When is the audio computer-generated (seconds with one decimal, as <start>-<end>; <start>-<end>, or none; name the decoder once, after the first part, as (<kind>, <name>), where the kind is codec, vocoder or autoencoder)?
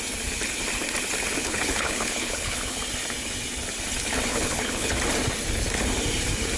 1.4-2.8 (codec, HILCodec); 4.3-5.0